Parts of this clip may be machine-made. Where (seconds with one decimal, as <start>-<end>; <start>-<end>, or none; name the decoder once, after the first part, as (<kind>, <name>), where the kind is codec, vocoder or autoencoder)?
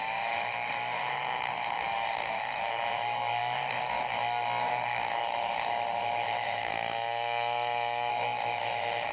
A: 0.0-6.7 (autoencoder, DAC-VAE); 8.1-9.1